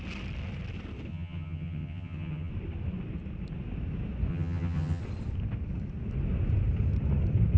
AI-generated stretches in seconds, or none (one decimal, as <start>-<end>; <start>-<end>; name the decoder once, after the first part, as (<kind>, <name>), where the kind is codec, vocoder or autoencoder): 1.1-2.5 (vocoder, HiFi-GAN); 4.3-5.0